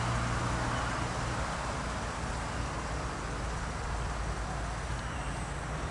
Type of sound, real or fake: real